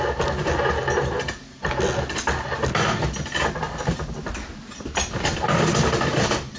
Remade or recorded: recorded